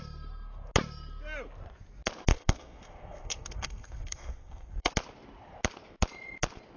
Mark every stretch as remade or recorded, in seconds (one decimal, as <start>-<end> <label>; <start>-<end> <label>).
0.0-2.3 recorded; 2.3-4.9 remade; 4.9-6.8 recorded